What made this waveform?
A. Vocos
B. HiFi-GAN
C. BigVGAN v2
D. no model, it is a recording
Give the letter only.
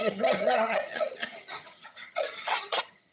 B